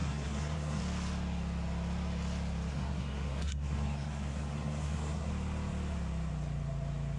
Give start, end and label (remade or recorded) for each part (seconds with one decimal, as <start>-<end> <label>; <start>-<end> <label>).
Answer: 0.0-0.8 remade; 0.8-2.7 recorded; 2.7-5.3 remade; 5.3-7.2 recorded